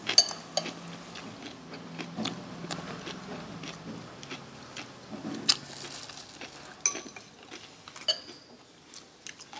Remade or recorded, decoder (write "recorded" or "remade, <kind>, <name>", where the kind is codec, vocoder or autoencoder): recorded